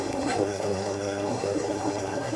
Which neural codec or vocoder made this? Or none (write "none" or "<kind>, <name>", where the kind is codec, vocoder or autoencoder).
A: codec, SNAC